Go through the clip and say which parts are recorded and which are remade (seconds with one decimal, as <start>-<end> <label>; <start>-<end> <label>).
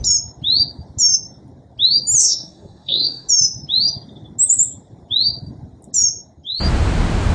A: 0.0-2.2 recorded; 2.2-3.3 remade; 3.3-7.3 recorded